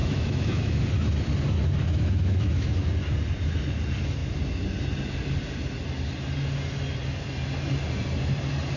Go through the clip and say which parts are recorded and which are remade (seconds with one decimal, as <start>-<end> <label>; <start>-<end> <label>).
0.0-0.8 remade; 0.8-1.8 recorded; 1.8-2.9 remade; 2.9-8.8 recorded